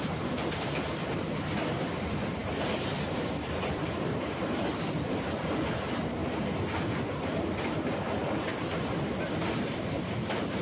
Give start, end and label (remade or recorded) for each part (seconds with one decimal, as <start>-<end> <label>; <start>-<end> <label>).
0.0-6.2 remade; 6.2-7.1 recorded; 7.1-8.5 remade; 8.5-9.1 recorded; 9.1-10.6 remade